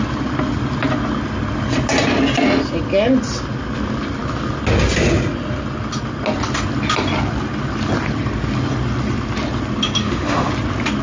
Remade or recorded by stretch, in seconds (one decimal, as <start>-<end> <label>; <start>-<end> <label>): 0.0-10.0 recorded; 10.0-10.5 remade; 10.5-11.0 recorded